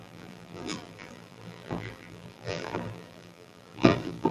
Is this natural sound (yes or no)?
no